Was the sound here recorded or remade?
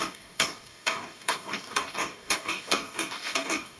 remade